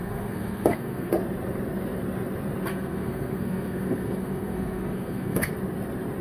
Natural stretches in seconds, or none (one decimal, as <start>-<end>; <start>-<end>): 1.1-2.7; 5.5-6.2